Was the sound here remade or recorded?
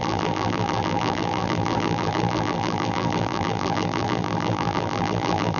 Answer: remade